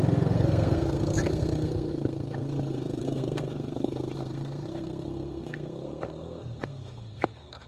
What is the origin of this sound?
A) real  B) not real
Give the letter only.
B